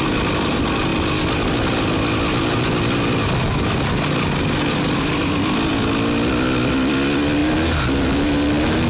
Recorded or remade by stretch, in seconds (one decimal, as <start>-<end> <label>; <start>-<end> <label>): 0.0-8.9 recorded